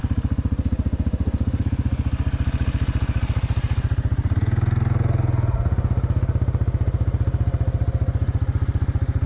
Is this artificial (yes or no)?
no